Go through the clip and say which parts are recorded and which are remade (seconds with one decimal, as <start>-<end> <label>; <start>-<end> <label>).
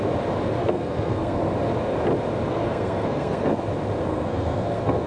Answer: 0.0-0.6 recorded; 0.6-1.4 remade; 1.4-2.5 recorded; 2.5-3.6 remade; 3.6-4.1 recorded; 4.1-5.1 remade